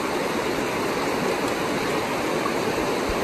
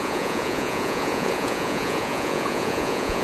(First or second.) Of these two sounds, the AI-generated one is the second